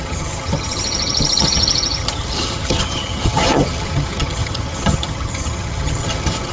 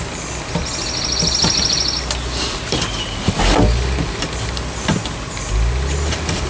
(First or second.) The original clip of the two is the second